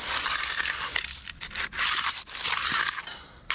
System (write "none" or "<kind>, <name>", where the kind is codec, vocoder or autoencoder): vocoder, BigVGAN v2